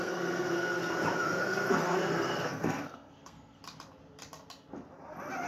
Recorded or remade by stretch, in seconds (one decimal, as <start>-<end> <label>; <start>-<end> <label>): 0.0-0.8 remade; 0.8-1.4 recorded; 1.4-3.6 remade; 3.6-5.5 recorded